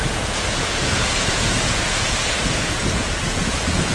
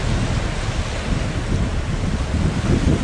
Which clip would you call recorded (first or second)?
second